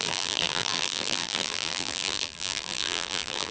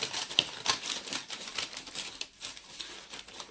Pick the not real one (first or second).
first